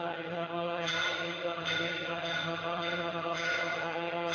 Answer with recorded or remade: remade